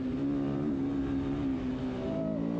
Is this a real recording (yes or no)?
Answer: yes